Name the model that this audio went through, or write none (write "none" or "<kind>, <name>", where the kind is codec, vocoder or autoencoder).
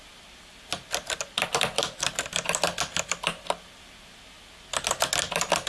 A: none